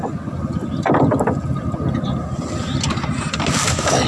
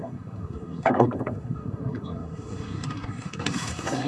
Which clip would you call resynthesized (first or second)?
second